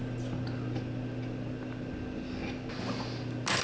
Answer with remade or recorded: recorded